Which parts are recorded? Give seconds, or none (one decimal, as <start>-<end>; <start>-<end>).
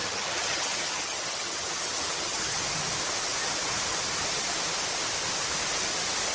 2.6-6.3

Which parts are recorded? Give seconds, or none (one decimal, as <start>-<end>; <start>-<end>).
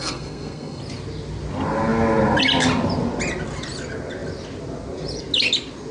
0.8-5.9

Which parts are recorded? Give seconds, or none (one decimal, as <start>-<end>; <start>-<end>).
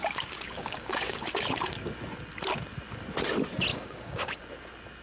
1.7-3.7; 4.4-5.0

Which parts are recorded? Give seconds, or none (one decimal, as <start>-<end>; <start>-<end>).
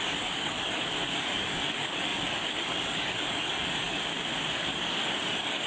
4.0-4.5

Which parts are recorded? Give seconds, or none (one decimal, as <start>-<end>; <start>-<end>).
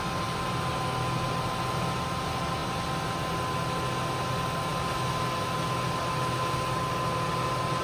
0.0-7.8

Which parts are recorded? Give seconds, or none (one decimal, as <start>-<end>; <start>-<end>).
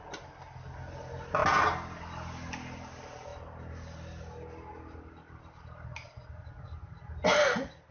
0.0-7.9